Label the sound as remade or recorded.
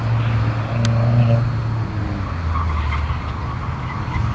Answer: recorded